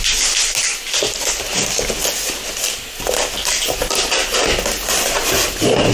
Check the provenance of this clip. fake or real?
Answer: real